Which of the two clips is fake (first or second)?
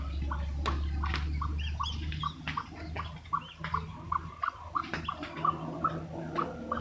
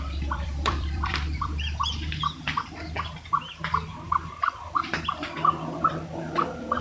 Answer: second